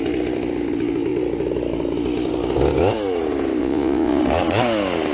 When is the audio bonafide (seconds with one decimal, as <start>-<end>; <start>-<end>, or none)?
0.0-3.6; 4.2-5.1